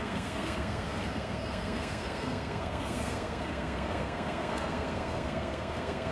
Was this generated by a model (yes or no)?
yes